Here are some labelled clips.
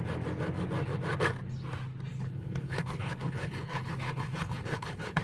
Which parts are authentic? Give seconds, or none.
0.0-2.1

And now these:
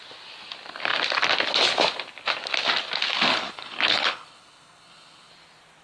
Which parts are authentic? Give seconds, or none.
0.0-3.3; 5.3-5.8

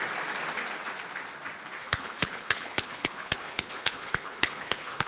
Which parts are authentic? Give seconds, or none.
0.0-1.8

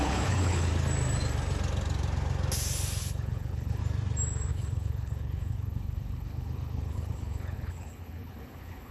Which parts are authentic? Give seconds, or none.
0.7-3.0; 3.8-4.5